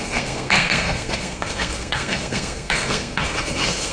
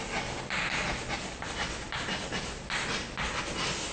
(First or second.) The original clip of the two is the second